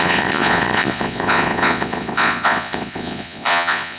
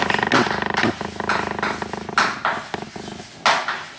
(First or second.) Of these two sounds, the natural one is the second